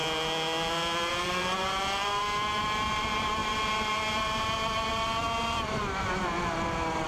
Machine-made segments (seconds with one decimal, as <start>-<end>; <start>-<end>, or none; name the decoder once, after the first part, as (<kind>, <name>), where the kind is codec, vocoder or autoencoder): 1.1-7.1 (vocoder, BigVGAN v2)